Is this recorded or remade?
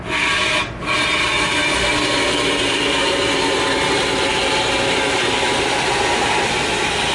recorded